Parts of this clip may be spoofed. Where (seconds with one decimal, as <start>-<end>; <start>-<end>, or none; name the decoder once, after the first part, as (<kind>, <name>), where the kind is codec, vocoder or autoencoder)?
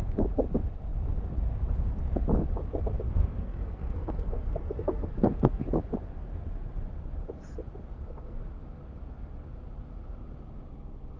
3.0-5.6 (codec, SNAC); 7.9-8.5